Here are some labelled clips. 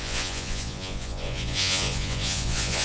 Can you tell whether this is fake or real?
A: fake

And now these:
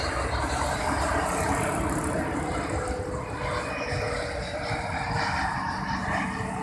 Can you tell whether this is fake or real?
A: real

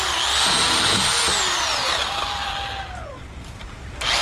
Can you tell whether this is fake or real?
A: real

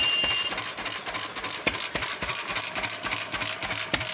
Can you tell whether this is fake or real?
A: real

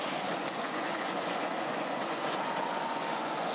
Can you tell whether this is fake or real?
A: fake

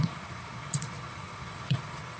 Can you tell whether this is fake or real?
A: fake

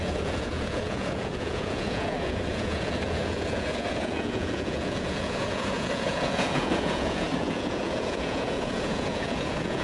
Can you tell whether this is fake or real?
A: fake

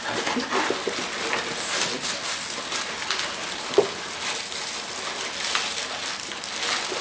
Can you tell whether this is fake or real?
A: real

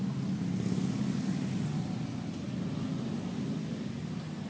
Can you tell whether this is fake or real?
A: real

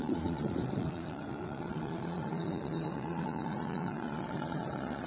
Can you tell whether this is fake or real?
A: fake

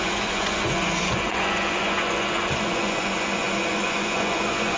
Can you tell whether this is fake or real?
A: fake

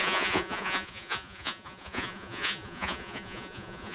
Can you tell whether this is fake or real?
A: fake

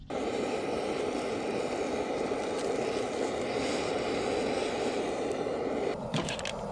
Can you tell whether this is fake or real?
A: real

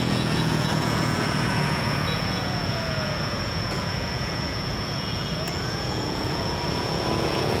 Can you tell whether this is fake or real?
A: fake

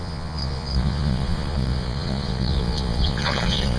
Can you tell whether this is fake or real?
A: fake